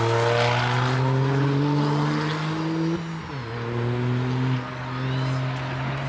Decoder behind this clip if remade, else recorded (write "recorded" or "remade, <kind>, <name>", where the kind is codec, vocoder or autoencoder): recorded